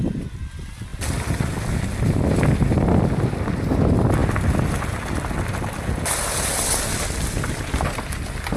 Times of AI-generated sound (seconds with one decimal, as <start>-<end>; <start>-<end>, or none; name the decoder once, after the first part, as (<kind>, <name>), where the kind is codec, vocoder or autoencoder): none

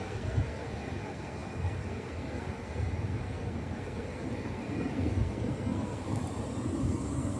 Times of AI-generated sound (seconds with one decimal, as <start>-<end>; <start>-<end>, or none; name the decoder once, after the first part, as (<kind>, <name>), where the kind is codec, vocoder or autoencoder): 0.0-6.2 (codec, SNAC); 6.8-7.4

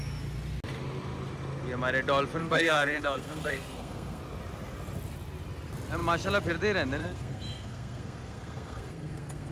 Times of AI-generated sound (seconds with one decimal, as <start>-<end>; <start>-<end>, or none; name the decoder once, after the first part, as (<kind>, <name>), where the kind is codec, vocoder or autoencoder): 2.4-4.2 (codec, SNAC); 7.0-9.5

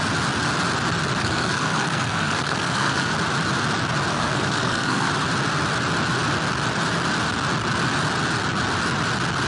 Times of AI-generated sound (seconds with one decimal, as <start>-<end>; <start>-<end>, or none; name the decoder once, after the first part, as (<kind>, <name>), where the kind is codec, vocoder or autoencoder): 1.2-3.1 (codec, SNAC); 4.1-5.1

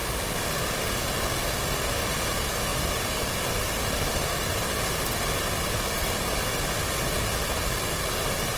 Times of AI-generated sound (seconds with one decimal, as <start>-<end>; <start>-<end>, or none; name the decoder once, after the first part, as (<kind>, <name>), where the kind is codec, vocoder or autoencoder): none